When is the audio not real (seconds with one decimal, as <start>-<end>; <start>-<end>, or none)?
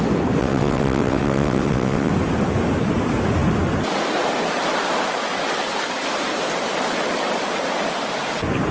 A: 0.4-2.1